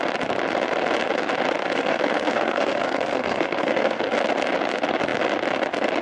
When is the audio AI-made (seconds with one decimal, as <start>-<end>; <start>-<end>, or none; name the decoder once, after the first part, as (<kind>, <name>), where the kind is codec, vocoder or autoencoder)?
1.6-4.1 (codec, SNAC)